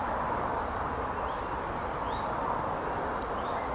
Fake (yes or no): no